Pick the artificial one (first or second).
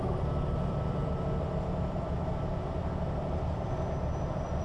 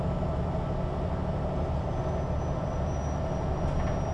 first